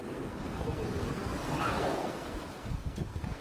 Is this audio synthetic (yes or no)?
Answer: yes